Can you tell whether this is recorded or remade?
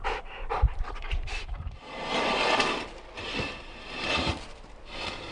remade